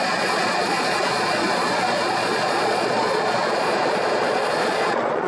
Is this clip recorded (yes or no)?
no